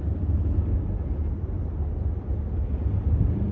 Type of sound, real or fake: real